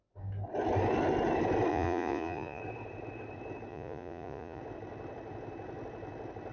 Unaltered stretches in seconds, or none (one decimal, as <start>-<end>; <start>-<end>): 0.0-1.7; 2.6-3.7; 4.6-6.5

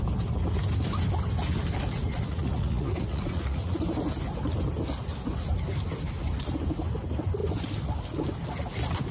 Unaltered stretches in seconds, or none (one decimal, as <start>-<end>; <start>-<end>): 0.0-2.1; 3.8-9.1

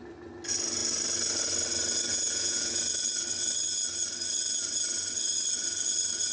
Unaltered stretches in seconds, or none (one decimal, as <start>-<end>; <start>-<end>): 0.0-2.1; 2.8-6.3

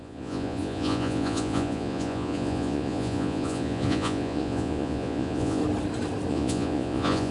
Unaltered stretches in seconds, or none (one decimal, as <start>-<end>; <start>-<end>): 5.6-6.3

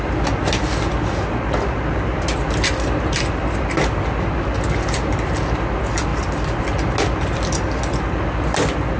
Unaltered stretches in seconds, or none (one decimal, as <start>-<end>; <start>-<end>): 0.0-9.0

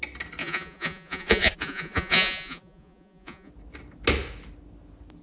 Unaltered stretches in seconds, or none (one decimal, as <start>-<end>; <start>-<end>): 0.0-0.4; 3.5-5.2